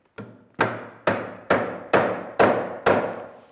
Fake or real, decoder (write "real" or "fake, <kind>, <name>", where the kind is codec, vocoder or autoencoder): real